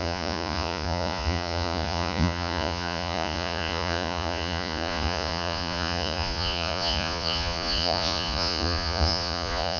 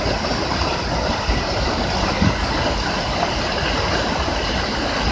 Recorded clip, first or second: second